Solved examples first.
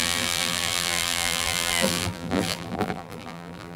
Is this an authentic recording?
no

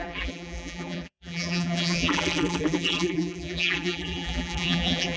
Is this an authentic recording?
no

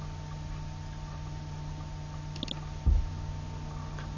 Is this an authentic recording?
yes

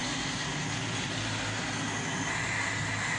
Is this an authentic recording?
yes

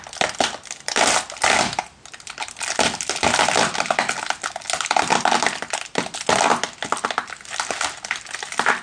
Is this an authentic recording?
yes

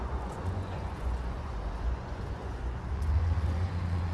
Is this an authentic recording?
no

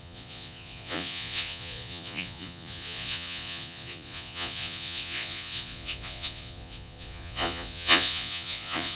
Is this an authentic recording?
no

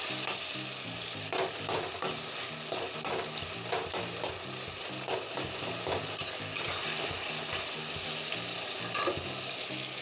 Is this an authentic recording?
yes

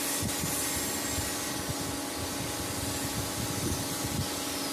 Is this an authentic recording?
yes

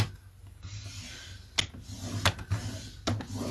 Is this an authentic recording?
yes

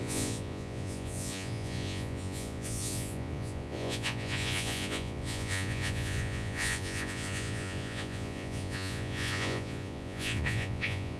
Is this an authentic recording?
no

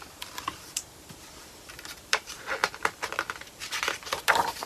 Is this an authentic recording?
no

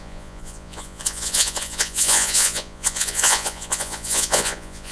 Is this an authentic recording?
no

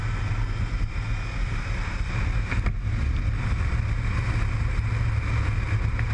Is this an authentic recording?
yes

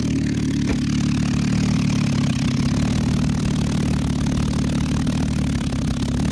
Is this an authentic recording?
yes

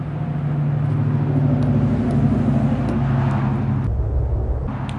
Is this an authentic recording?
yes